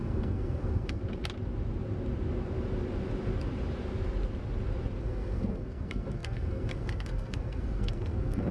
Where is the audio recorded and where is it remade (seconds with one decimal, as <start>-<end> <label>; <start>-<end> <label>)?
0.0-1.0 remade; 1.0-5.0 recorded; 5.0-8.5 remade